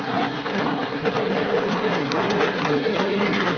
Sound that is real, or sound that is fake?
fake